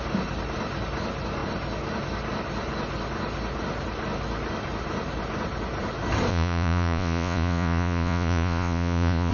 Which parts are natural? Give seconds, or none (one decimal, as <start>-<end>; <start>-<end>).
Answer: 0.0-6.3